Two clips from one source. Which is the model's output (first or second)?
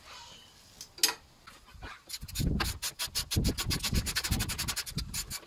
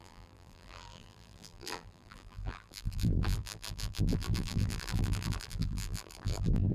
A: second